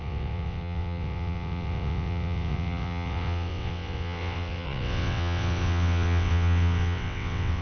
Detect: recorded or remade remade